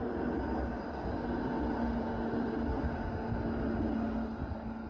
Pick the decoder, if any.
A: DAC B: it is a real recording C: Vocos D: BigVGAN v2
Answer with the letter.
B